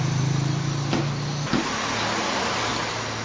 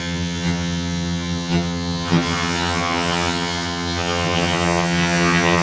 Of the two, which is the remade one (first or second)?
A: second